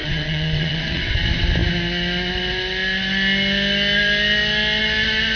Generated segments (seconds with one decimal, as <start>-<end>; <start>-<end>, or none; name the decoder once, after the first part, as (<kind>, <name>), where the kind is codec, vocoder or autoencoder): 0.0-1.1 (vocoder, WaveNeXt)